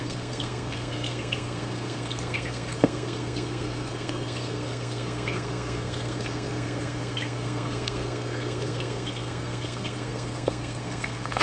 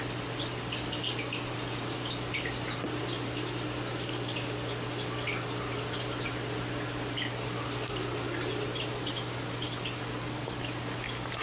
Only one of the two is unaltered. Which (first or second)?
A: second